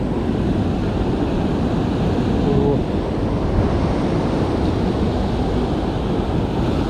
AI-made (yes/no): no